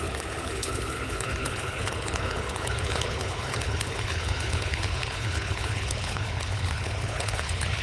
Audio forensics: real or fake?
fake